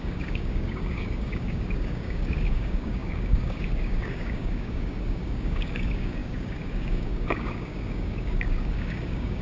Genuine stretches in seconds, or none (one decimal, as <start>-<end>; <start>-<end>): none